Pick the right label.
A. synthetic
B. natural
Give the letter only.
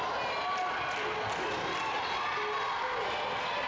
B